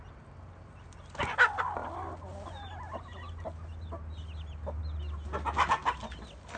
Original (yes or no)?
yes